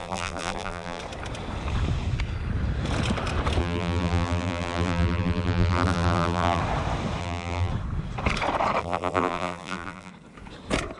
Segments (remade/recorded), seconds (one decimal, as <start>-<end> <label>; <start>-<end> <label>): 0.0-1.0 remade; 1.0-3.6 recorded; 3.6-6.6 remade; 6.6-7.2 recorded; 7.2-7.7 remade; 7.7-8.8 recorded; 8.8-10.1 remade; 10.1-11.0 recorded